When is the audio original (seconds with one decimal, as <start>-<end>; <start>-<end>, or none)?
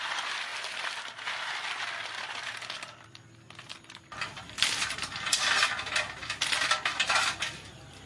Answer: 0.5-1.5